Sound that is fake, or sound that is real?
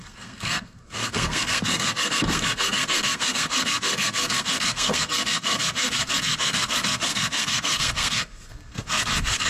fake